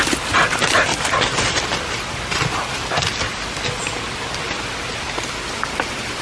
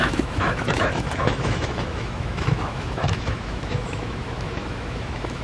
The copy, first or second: second